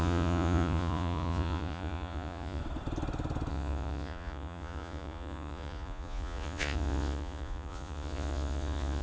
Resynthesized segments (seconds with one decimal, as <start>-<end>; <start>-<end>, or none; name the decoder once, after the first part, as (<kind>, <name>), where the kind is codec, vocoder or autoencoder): 0.0-2.6 (vocoder, Vocos); 3.5-9.0